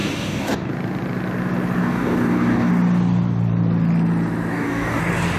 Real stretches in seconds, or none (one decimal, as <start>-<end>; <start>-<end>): 0.7-1.8; 2.7-4.5; 5.0-5.4